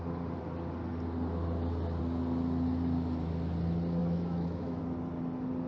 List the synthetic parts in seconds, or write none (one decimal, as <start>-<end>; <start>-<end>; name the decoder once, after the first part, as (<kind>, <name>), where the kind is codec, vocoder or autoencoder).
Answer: 4.0-4.8 (autoencoder, DAC-VAE)